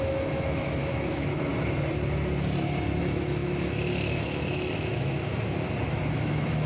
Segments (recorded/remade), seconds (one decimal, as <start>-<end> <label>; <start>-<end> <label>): 0.0-1.5 remade; 1.5-3.0 recorded; 3.0-5.3 remade; 5.3-6.1 recorded; 6.1-6.7 remade